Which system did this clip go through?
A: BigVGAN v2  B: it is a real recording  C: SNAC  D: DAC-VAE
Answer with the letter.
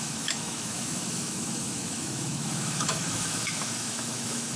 D